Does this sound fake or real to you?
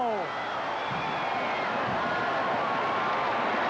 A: real